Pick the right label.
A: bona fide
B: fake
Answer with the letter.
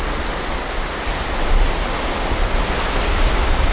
A